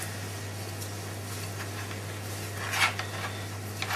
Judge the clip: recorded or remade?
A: recorded